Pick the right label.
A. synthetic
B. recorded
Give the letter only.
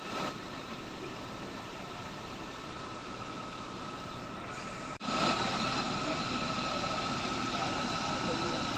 A